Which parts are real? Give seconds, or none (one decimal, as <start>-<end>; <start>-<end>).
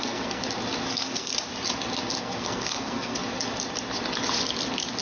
0.4-0.9; 1.3-2.2; 3.2-5.0